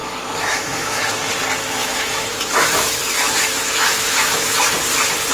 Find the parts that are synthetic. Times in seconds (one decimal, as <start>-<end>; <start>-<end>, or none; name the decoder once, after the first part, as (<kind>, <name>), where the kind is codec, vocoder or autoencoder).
0.0-1.3 (autoencoder, DAC-VAE); 1.8-4.7